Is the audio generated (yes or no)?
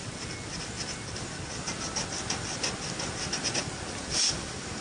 no